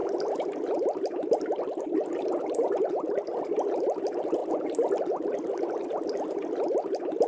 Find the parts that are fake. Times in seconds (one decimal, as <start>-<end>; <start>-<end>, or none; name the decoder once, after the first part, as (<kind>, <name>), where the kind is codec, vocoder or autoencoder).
0.0-3.4 (vocoder, BigVGAN v2)